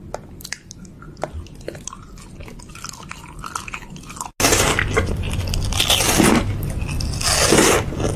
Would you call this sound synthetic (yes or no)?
no